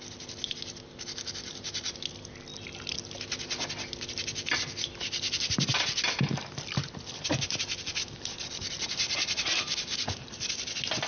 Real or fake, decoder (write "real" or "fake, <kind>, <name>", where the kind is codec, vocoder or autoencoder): real